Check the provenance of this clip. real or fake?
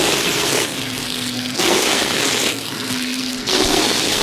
fake